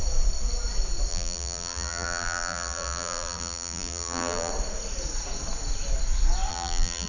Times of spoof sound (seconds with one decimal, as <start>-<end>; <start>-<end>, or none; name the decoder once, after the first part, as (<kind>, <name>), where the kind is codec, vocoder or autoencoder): 1.1-4.5 (vocoder, BigVGAN v2); 6.5-7.1